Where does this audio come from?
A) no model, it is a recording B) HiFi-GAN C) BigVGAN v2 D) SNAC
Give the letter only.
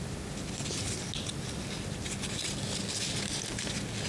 A